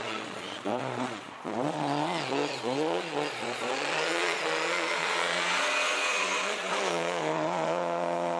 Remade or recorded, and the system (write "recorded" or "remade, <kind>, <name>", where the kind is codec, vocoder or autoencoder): remade, vocoder, Vocos